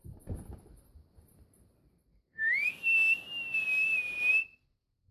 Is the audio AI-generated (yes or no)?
no